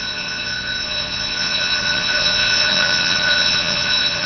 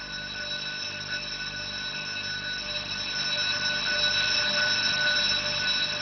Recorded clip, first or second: second